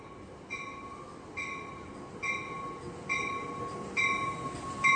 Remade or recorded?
recorded